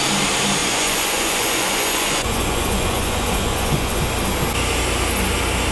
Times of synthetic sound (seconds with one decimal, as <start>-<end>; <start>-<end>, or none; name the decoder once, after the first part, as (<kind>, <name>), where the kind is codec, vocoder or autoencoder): 0.6-4.0 (vocoder, Vocos)

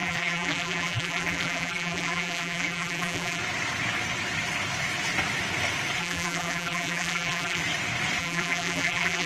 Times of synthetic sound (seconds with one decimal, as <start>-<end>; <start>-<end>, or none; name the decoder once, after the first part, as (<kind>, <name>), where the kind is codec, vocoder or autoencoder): 0.0-3.4 (vocoder, BigVGAN v2); 6.0-7.6; 8.2-9.3

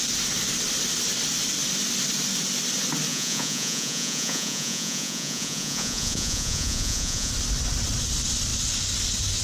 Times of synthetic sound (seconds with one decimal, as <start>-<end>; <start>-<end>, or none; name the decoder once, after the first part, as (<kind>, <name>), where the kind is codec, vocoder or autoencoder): 3.1-7.3 (vocoder, Vocos)

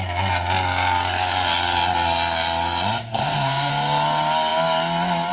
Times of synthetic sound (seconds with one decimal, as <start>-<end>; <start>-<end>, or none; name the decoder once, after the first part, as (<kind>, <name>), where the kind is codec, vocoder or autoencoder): 3.1-3.7 (codec, SNAC)